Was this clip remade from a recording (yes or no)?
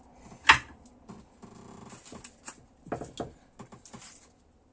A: no